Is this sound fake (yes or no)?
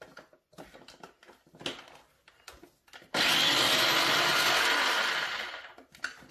no